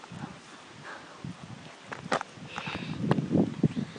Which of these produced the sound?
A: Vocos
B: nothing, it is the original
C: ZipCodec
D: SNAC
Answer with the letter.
B